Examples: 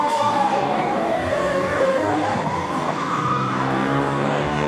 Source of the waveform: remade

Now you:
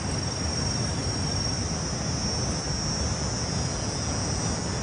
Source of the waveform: recorded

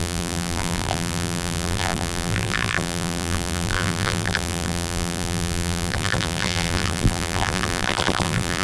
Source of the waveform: remade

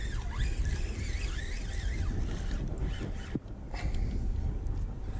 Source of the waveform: recorded